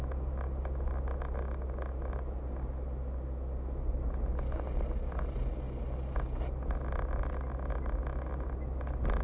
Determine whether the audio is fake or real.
real